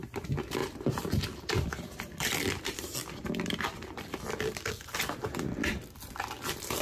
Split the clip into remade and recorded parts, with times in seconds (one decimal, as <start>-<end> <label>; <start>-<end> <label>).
0.0-0.6 recorded; 0.6-4.7 remade; 4.7-6.8 recorded